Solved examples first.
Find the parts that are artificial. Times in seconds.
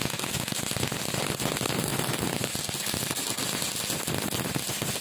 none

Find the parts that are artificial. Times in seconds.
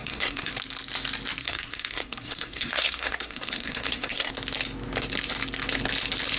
0.0-0.5 (codec, SNAC); 1.4-4.3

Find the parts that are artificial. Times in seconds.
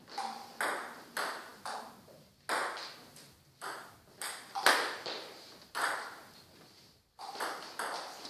none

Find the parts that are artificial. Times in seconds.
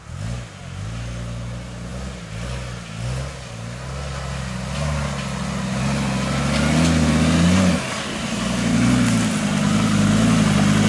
none